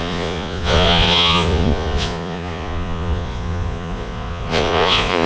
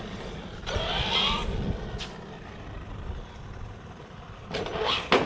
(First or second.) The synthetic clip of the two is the first